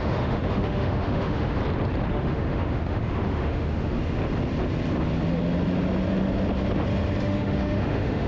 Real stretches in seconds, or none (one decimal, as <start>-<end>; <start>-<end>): 1.6-2.1; 4.0-7.2